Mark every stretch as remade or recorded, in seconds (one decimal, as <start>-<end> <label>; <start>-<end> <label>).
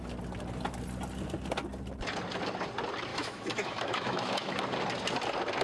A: 0.0-3.1 recorded; 3.1-4.5 remade; 4.5-5.6 recorded